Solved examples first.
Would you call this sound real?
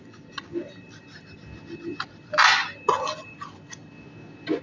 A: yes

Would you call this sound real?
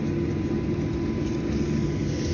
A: yes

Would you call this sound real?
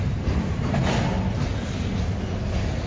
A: yes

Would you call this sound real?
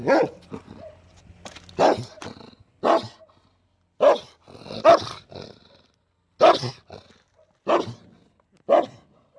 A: yes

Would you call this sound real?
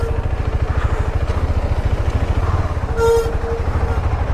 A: yes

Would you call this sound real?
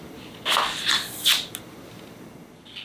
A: yes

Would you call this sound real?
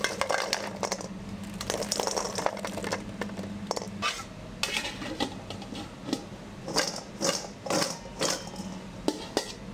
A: yes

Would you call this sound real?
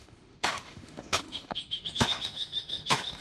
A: no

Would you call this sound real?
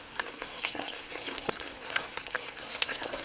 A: no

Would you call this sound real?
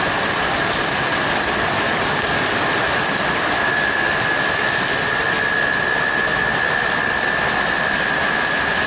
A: no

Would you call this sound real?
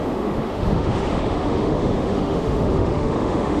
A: no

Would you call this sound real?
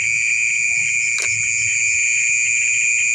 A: yes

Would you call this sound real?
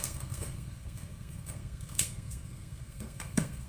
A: no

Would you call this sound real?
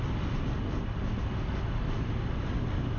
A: yes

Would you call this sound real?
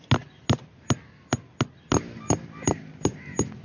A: yes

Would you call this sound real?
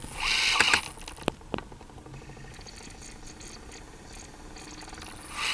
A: yes